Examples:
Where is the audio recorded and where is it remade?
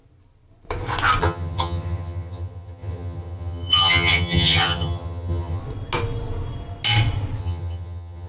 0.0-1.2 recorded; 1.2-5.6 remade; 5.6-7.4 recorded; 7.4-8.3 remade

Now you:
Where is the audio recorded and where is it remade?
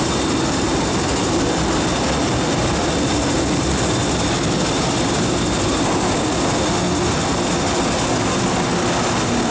0.0-9.5 recorded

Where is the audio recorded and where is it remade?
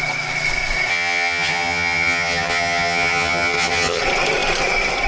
0.0-0.9 recorded; 0.9-4.0 remade; 4.0-5.1 recorded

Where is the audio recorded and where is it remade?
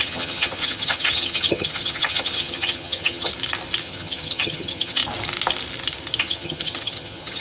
0.0-3.3 remade; 3.3-3.8 recorded; 3.8-5.0 remade; 5.0-6.2 recorded; 6.2-7.4 remade